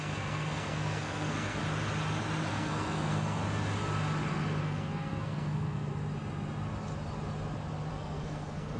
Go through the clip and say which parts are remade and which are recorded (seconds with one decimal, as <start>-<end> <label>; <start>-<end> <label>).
0.0-1.6 remade; 1.6-2.5 recorded; 2.5-3.4 remade; 3.4-4.6 recorded; 4.6-5.9 remade; 5.9-7.9 recorded; 7.9-8.8 remade